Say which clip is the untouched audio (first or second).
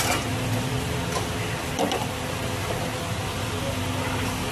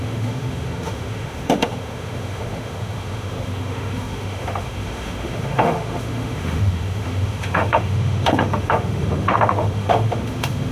first